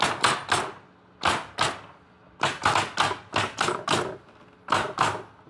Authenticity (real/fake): real